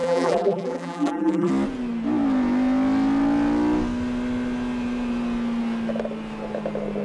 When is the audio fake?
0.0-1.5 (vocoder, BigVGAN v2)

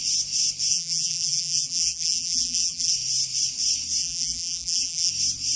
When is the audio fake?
0.7-2.9 (vocoder, BigVGAN v2); 4.0-5.1

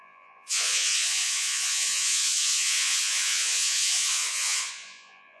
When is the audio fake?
0.0-5.4 (vocoder, Vocos)

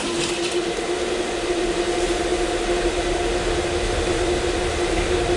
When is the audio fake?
none

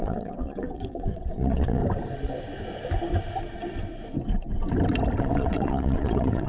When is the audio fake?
0.0-1.8 (vocoder, WaveNeXt); 5.2-6.5

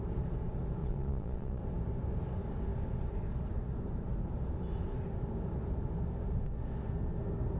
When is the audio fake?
0.8-1.6 (vocoder, Vocos)

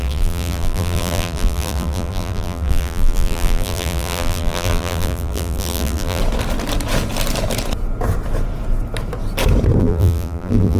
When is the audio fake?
0.0-6.2 (vocoder, BigVGAN v2); 9.8-10.8

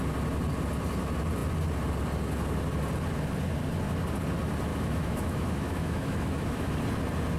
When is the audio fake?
4.7-6.8 (autoencoder, DAC-VAE)